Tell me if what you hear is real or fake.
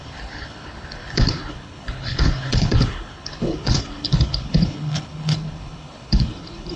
fake